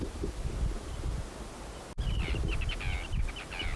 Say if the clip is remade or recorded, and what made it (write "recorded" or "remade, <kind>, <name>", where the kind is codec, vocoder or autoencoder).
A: recorded